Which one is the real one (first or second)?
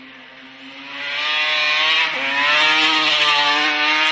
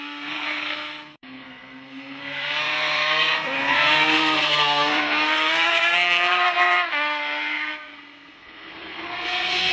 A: first